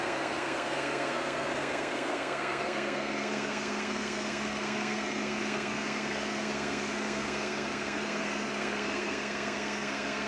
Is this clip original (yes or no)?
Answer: no